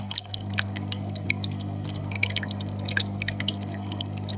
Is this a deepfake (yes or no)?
yes